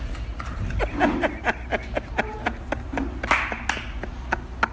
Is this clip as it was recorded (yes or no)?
yes